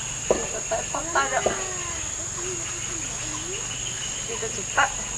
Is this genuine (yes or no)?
yes